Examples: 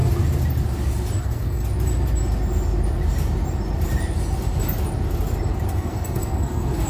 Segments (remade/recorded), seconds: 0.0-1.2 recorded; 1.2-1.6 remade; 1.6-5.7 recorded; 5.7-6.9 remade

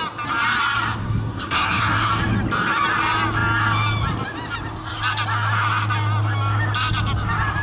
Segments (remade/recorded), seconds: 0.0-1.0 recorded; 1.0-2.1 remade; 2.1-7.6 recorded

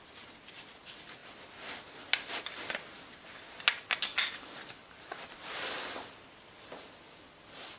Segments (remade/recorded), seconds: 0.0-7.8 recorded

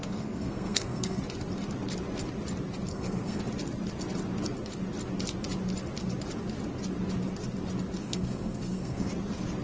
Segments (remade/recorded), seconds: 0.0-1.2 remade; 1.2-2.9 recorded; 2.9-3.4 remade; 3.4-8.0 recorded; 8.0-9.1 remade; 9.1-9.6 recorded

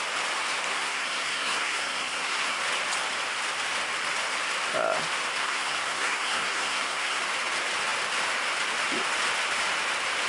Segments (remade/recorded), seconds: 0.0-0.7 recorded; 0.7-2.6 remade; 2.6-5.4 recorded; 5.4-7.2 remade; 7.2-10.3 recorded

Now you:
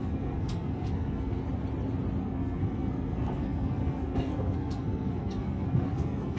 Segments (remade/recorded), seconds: 0.0-1.4 remade; 1.4-2.2 recorded; 2.2-6.4 remade

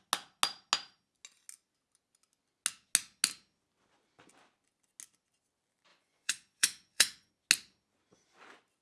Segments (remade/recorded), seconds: 0.0-5.9 recorded; 5.9-7.3 remade; 7.3-8.8 recorded

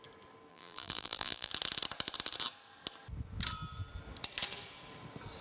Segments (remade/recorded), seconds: 0.0-0.5 recorded; 0.5-1.5 remade; 1.5-5.4 recorded